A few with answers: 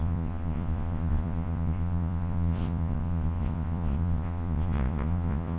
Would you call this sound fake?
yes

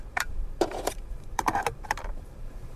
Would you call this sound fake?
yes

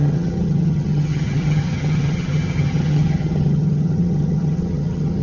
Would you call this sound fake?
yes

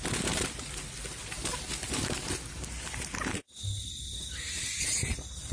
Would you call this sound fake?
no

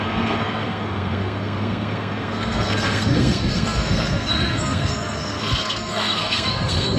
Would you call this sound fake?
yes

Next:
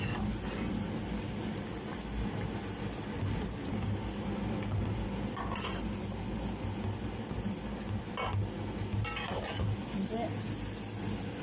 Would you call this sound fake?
no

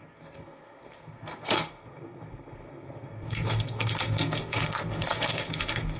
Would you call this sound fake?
yes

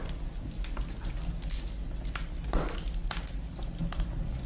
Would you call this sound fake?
no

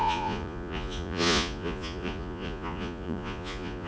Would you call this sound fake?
yes